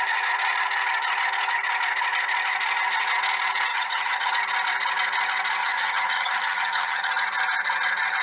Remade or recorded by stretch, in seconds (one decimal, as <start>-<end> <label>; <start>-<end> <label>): 0.0-3.7 recorded; 3.7-4.3 remade; 4.3-5.6 recorded; 5.6-7.1 remade; 7.1-8.2 recorded